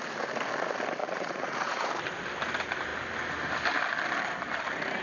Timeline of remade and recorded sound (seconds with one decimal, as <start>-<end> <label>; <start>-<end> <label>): 0.0-1.0 recorded; 1.0-1.9 remade; 1.9-5.0 recorded